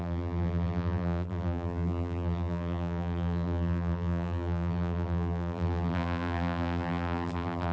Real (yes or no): no